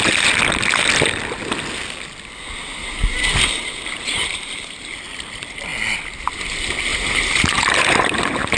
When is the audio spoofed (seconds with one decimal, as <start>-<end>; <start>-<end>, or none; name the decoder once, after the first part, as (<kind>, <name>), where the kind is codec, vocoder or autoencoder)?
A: 2.8-4.9 (vocoder, BigVGAN v2); 6.9-8.6